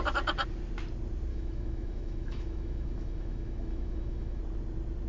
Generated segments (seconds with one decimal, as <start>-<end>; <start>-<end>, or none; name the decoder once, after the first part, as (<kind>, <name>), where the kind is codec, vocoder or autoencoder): 1.3-4.4 (autoencoder, DAC-VAE)